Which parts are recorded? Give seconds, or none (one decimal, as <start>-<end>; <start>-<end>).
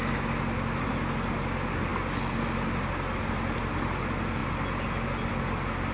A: 0.0-5.9